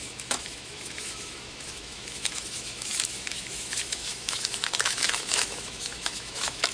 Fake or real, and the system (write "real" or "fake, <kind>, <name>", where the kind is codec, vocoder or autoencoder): fake, autoencoder, DAC-VAE